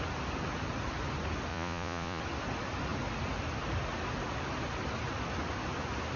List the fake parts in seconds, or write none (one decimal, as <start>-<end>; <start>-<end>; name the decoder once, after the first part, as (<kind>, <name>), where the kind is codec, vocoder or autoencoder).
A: 1.5-2.2 (vocoder, Vocos)